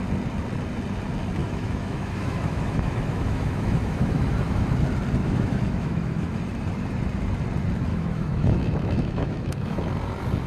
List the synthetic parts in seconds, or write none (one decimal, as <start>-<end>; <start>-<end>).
1.4-4.6; 5.2-6.4; 7.9-9.8